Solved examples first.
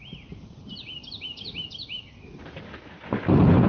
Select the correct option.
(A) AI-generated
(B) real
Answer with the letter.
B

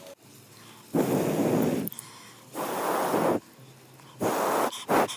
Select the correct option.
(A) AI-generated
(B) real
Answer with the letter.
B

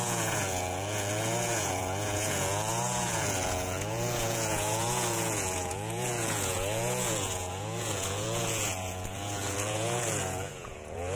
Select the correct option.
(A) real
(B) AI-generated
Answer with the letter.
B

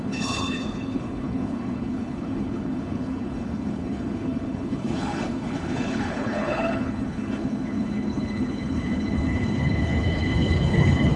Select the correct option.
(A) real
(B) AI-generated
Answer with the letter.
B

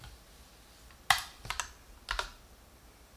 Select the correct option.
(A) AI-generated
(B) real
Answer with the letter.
B